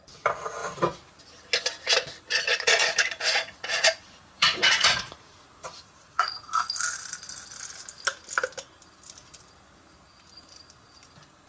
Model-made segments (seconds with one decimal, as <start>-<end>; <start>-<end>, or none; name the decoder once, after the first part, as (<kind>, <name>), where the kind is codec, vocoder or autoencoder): 2.5-6.3 (vocoder, Vocos)